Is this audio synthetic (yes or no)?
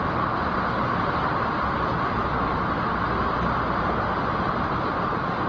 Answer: no